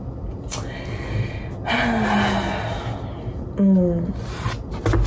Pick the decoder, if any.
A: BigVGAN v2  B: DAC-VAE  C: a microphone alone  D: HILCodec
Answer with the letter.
C